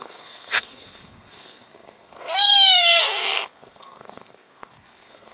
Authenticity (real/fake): fake